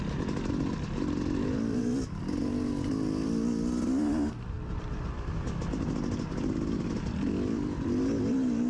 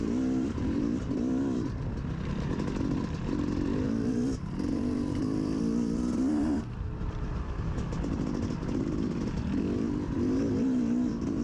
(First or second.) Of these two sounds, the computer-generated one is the second